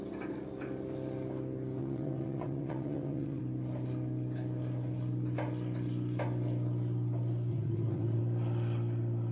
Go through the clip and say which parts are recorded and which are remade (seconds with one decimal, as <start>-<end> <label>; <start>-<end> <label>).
0.0-1.8 recorded; 1.8-3.4 remade; 3.4-7.5 recorded; 7.5-8.2 remade; 8.2-9.3 recorded